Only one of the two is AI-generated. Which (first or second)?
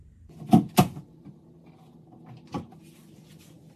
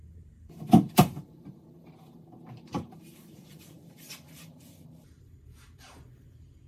second